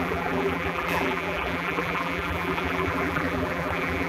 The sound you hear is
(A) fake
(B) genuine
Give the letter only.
A